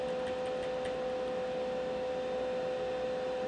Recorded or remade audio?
recorded